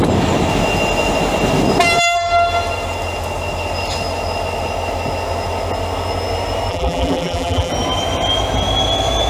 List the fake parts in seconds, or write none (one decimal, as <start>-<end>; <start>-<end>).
6.7-7.7